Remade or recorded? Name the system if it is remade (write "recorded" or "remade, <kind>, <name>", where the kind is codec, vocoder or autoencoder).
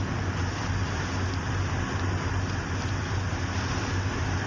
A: recorded